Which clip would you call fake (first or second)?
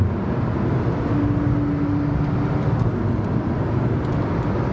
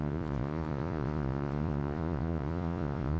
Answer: second